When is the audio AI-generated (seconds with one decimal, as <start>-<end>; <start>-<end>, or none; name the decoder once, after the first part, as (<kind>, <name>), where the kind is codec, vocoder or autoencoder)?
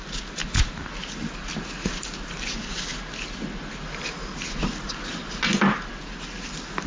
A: none